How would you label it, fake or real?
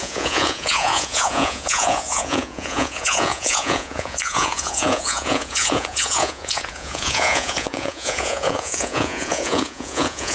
fake